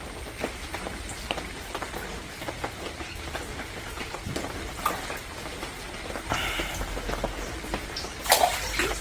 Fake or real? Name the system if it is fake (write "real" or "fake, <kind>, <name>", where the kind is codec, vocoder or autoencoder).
real